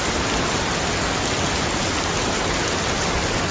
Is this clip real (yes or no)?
yes